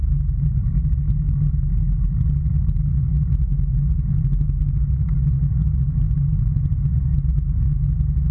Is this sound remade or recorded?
recorded